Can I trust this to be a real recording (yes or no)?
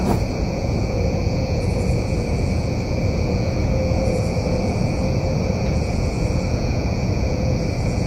no